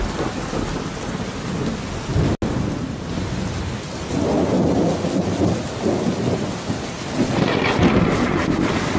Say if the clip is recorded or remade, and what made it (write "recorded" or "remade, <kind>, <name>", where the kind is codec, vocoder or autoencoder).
recorded